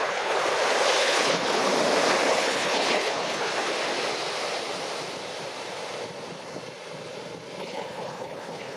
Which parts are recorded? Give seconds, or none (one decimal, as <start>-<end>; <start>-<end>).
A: 0.4-1.0; 1.6-2.3; 3.5-7.6